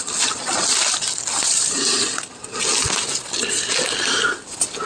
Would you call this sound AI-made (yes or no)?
no